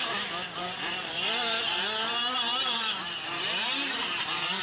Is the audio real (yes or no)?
no